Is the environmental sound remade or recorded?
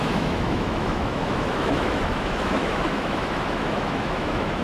remade